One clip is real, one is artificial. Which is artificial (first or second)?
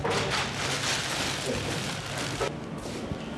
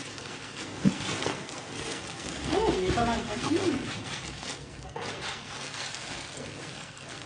second